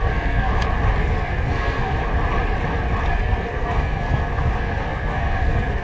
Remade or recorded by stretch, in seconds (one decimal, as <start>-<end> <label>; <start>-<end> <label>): 0.0-0.5 remade; 0.5-1.0 recorded; 1.0-1.9 remade; 1.9-3.1 recorded; 3.1-5.8 remade